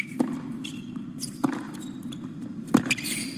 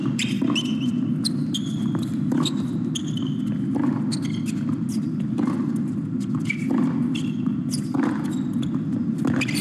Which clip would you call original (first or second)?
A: second